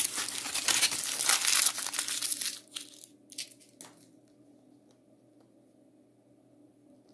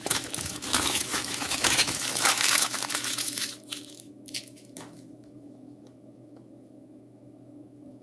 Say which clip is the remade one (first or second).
second